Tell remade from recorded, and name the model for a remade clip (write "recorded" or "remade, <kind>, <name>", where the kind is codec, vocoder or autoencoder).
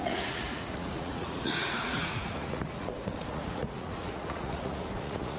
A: remade, vocoder, Vocos